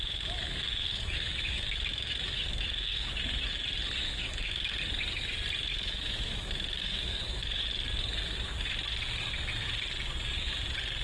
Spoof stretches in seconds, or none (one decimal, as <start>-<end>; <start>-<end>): 0.0-3.1; 4.2-4.8; 5.7-7.6

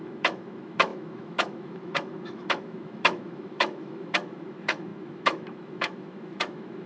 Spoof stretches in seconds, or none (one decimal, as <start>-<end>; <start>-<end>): 0.0-6.9

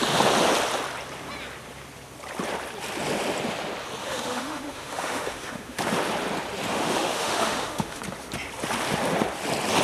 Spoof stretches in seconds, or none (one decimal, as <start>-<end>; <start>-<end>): 4.0-5.8; 6.7-8.0

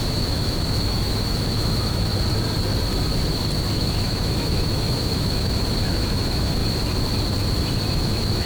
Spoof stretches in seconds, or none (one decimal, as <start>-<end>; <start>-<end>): 0.0-2.1; 3.7-6.6; 7.9-8.5

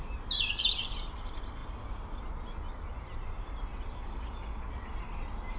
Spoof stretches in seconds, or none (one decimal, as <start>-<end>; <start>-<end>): none

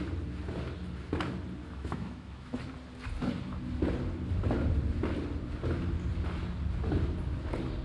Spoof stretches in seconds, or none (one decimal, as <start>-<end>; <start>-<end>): 1.6-2.6